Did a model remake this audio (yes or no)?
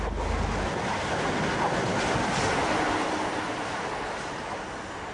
no